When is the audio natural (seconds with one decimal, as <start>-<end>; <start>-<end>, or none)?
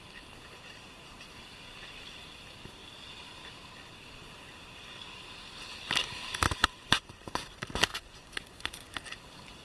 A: 0.0-6.6; 7.4-7.9; 8.9-9.6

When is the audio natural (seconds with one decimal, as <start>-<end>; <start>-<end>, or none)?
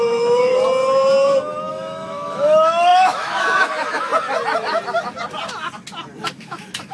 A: 0.5-1.7; 4.1-6.3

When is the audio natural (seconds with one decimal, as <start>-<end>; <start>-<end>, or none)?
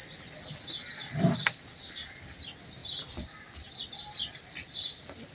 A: 0.0-5.3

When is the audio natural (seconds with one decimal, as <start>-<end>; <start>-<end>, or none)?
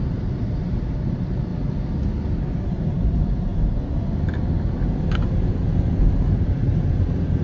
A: 1.5-2.7; 3.5-5.0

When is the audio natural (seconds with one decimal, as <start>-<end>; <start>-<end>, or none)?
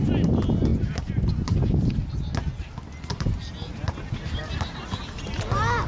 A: 0.0-0.7; 1.3-3.1; 5.0-5.9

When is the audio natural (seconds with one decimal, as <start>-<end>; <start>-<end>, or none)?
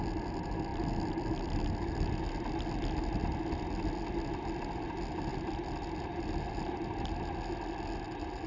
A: 0.0-8.5